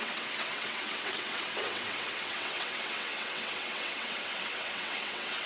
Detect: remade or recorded remade